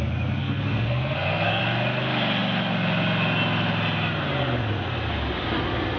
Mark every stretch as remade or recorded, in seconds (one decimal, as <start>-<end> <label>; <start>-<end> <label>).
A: 0.0-0.4 recorded; 0.4-1.6 remade; 1.6-6.0 recorded